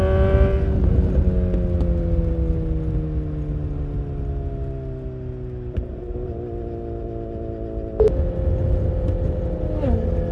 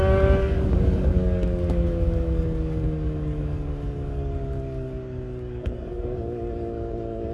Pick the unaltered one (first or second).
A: first